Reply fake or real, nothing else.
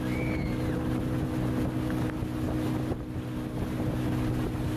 real